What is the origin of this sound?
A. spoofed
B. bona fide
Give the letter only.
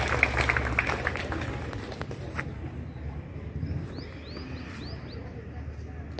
B